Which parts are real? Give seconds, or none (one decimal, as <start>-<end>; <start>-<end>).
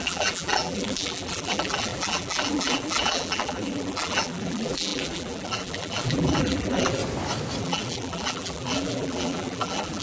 7.0-7.6